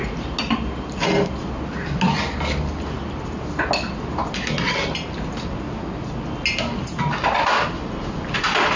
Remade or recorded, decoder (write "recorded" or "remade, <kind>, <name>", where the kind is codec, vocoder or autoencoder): recorded